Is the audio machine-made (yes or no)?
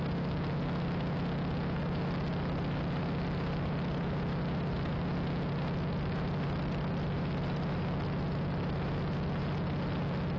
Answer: no